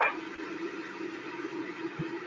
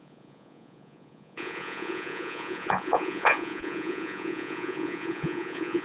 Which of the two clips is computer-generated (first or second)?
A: second